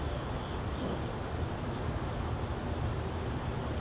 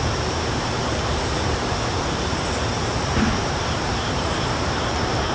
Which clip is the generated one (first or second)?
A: second